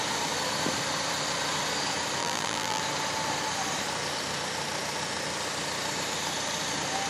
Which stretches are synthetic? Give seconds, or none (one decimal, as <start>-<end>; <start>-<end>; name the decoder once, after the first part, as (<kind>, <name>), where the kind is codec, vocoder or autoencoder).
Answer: 2.2-2.8 (vocoder, BigVGAN v2)